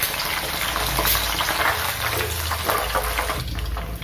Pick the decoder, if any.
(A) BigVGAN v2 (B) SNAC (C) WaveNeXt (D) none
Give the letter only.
D